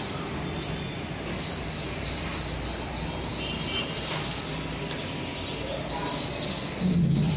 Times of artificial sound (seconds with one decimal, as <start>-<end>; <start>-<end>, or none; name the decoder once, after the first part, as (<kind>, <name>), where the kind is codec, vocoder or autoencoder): none